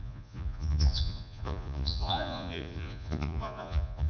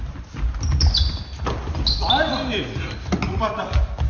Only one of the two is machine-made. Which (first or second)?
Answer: first